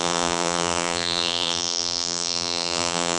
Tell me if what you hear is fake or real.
fake